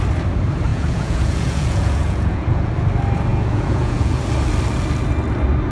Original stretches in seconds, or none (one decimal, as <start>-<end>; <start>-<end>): 0.0-0.7; 2.7-3.3; 4.2-5.7